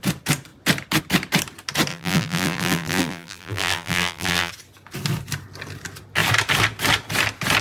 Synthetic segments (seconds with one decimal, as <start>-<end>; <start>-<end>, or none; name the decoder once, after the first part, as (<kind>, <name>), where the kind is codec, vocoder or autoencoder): 1.9-4.5 (vocoder, BigVGAN v2)